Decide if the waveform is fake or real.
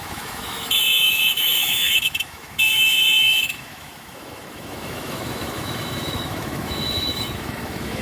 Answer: fake